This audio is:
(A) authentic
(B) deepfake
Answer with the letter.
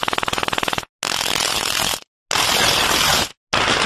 A